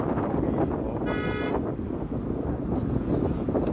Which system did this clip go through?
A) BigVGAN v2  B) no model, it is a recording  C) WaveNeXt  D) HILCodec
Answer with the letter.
B